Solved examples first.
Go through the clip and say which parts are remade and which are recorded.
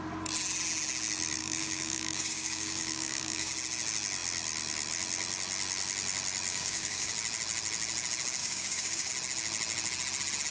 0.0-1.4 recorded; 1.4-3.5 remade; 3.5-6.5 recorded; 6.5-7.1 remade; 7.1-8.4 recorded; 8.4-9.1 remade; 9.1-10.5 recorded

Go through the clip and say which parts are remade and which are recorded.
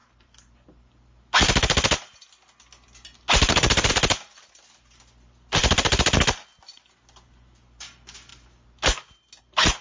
0.0-9.8 recorded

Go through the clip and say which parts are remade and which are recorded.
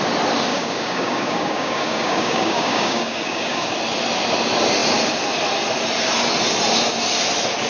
0.0-0.5 recorded; 0.5-3.7 remade; 3.7-7.7 recorded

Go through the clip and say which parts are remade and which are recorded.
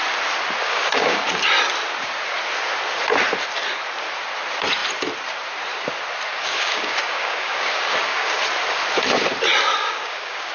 0.0-0.6 recorded; 0.6-1.3 remade; 1.3-6.3 recorded; 6.3-8.4 remade; 8.4-9.8 recorded; 9.8-10.5 remade